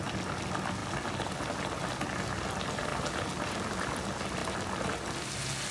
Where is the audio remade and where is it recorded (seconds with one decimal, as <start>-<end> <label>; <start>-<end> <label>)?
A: 0.0-5.7 recorded